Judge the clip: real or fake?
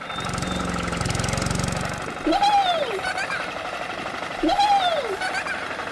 real